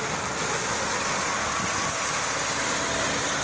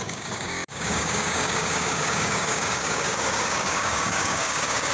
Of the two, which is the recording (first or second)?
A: first